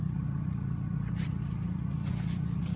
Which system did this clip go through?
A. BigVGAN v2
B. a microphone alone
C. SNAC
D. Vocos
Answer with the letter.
D